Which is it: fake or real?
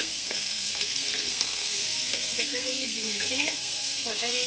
fake